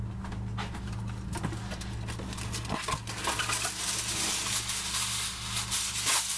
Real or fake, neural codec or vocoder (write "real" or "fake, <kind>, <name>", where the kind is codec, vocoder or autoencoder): real